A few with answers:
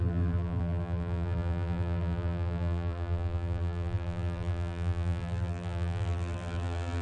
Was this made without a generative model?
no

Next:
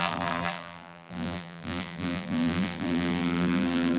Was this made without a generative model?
no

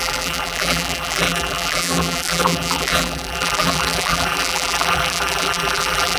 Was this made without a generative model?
no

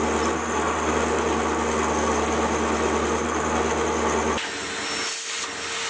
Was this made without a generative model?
yes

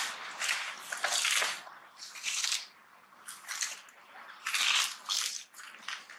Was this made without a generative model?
yes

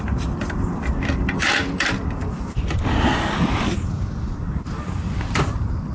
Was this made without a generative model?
no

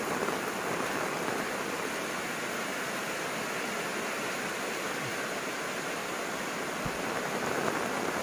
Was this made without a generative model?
yes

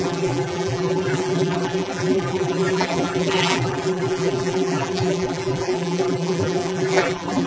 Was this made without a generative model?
no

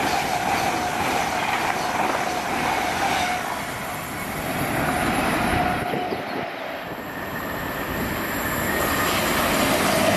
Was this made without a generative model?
yes